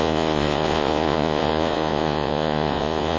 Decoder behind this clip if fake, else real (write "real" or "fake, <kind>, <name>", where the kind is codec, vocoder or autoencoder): fake, vocoder, Vocos